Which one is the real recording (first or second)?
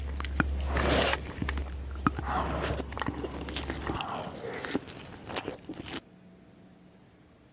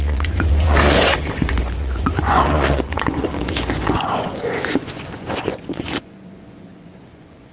first